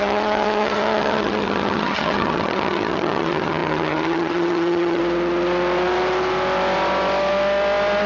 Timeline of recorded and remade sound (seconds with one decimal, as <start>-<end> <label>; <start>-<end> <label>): 0.0-5.0 remade; 5.0-8.1 recorded